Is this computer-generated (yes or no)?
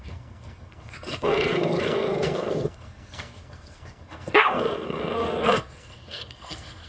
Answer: yes